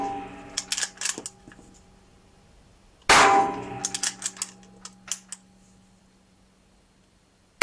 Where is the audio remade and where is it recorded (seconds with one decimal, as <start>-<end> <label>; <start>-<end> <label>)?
0.0-7.6 recorded

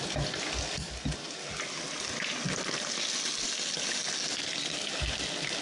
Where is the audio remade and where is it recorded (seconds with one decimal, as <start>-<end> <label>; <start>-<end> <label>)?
0.0-5.6 recorded